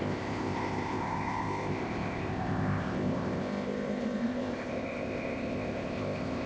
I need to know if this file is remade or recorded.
remade